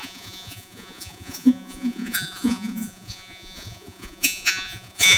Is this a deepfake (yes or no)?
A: yes